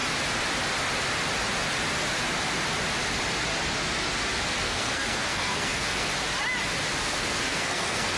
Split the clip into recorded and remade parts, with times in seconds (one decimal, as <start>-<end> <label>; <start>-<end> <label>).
0.0-4.6 recorded; 4.6-6.1 remade; 6.1-7.0 recorded; 7.0-8.2 remade